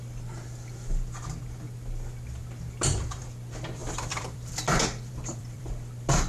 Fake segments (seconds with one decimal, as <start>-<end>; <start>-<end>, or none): 3.8-5.7